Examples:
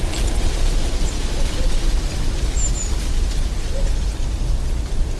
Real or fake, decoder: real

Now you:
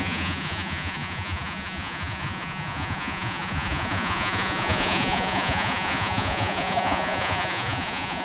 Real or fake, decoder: fake, vocoder, Vocos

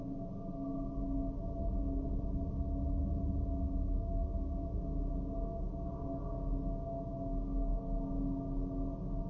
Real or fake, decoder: real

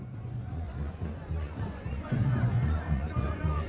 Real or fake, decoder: fake, vocoder, Vocos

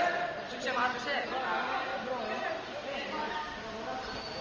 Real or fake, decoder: real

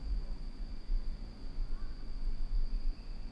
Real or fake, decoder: fake, vocoder, Vocos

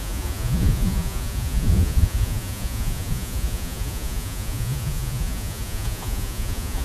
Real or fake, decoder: fake, vocoder, Vocos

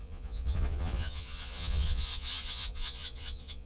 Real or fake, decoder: fake, vocoder, Vocos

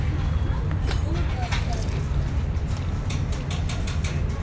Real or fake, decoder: real